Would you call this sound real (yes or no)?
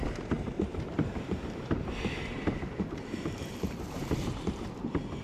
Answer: no